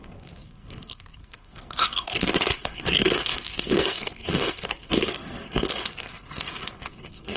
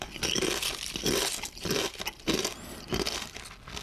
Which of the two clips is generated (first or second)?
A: first